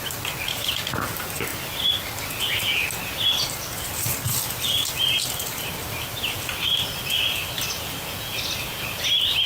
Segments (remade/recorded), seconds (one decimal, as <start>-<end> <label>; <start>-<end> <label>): 0.0-9.5 recorded

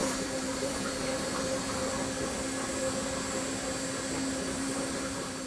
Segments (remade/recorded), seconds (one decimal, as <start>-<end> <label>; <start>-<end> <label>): 0.0-1.8 remade; 1.8-4.3 recorded; 4.3-5.5 remade

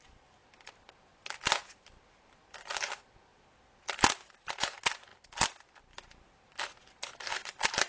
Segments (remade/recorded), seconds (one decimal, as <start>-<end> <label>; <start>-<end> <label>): 0.0-7.1 recorded; 7.1-7.9 remade

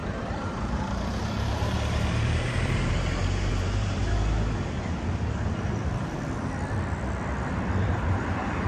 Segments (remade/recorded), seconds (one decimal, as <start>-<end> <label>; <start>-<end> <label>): 0.0-4.0 remade; 4.0-7.9 recorded; 7.9-8.7 remade

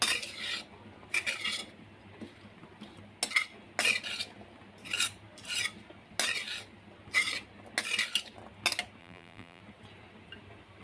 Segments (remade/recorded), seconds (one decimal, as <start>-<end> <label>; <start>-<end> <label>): 0.0-9.0 recorded; 9.0-9.6 remade; 9.6-10.8 recorded

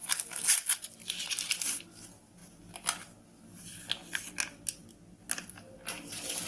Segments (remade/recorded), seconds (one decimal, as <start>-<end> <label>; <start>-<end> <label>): 0.0-6.5 recorded